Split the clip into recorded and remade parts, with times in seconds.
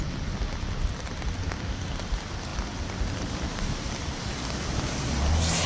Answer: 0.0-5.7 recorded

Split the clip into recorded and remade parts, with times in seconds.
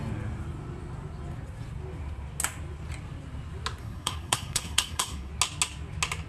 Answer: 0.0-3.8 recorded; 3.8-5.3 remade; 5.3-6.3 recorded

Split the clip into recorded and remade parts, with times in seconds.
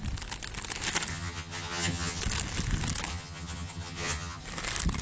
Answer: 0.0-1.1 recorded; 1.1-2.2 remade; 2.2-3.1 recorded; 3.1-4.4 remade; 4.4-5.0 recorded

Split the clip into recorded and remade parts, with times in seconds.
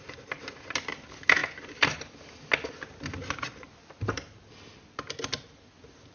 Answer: 0.0-6.1 recorded